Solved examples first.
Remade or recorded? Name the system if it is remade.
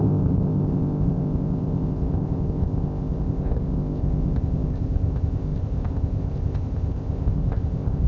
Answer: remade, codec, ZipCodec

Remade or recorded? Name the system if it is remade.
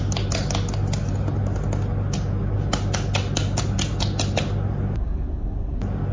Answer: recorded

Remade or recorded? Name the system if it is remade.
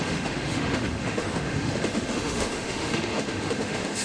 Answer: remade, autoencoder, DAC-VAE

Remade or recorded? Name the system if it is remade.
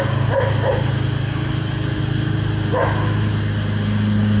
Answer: recorded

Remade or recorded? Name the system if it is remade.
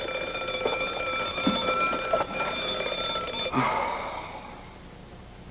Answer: recorded